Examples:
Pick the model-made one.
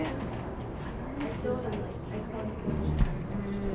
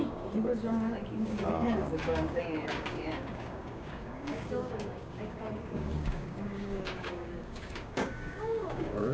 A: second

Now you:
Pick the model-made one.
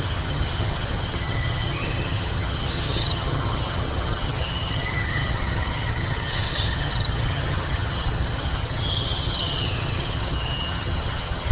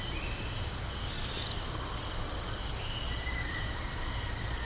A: first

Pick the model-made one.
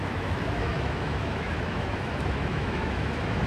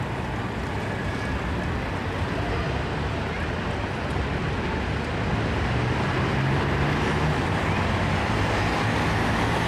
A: first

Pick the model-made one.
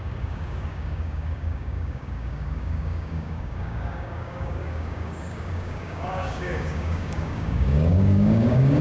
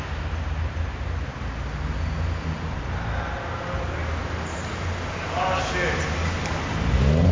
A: first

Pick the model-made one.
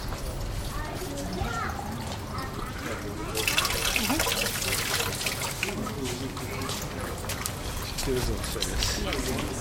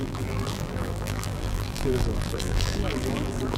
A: second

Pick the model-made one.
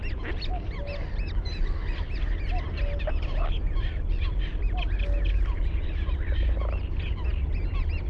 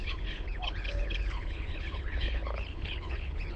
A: second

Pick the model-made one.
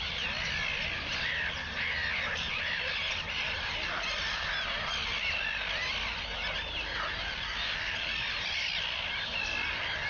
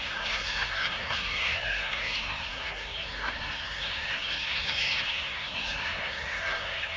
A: second